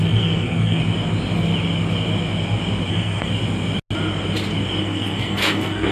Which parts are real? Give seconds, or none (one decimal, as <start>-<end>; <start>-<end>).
0.8-2.9; 3.3-4.8